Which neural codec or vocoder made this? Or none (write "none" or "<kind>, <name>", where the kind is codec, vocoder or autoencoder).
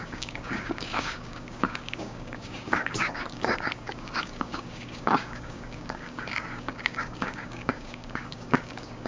codec, DAC